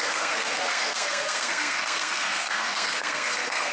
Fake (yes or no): yes